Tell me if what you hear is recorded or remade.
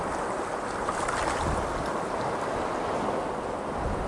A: recorded